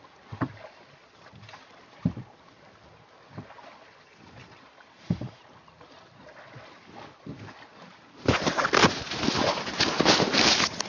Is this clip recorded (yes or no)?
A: yes